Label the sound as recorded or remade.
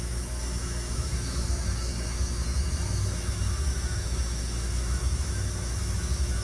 remade